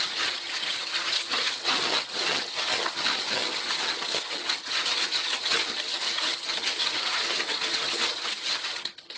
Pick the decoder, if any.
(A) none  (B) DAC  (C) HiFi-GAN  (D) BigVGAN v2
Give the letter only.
C